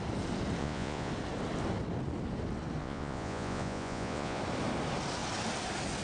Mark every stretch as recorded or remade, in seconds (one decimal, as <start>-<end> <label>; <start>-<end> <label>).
0.0-0.6 recorded; 0.6-1.1 remade; 1.1-2.8 recorded; 2.8-4.4 remade; 4.4-6.0 recorded